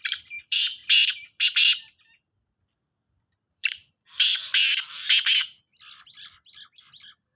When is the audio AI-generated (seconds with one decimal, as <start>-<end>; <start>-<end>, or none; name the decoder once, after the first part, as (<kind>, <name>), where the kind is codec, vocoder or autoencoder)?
0.0-0.8 (vocoder, BigVGAN v2); 3.5-7.4